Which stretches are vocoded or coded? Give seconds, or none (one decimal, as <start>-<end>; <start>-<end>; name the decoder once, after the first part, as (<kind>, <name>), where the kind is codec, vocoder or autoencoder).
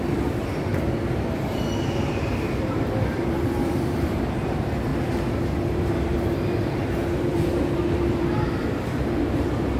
0.0-0.7 (vocoder, BigVGAN v2); 2.6-4.9; 5.4-9.8